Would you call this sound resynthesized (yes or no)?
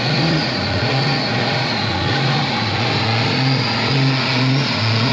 yes